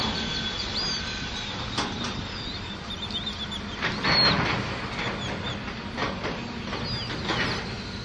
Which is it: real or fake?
real